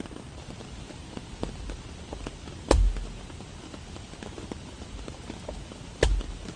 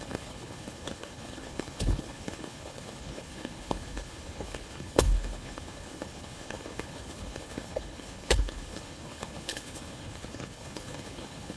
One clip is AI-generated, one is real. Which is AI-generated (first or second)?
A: second